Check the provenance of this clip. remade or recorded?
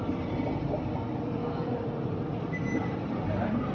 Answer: remade